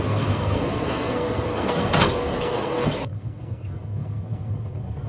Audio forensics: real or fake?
fake